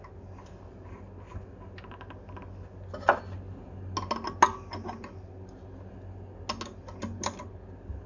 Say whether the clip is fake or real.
real